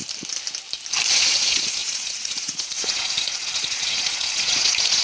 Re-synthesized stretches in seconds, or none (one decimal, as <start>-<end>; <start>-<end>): 1.1-5.0